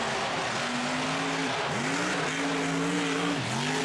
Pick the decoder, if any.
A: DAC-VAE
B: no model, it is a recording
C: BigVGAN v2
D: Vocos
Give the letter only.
B